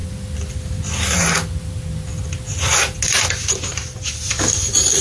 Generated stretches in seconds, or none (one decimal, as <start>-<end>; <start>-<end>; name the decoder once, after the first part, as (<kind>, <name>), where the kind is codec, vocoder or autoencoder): none